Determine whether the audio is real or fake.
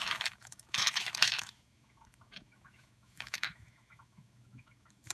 fake